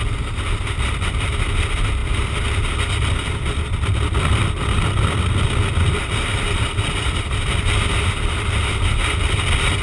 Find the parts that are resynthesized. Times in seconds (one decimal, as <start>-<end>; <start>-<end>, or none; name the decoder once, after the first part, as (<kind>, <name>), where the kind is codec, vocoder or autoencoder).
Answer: none

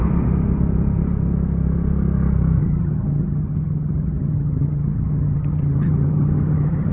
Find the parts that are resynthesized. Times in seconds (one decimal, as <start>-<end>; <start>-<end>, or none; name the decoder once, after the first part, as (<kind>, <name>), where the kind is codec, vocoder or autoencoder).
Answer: 2.6-6.9 (vocoder, HiFi-GAN)

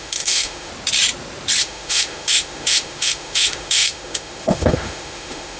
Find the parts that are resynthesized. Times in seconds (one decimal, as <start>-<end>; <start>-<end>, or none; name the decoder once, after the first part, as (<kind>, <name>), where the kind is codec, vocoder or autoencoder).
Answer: 0.0-0.7 (autoencoder, DAC-VAE); 1.6-5.6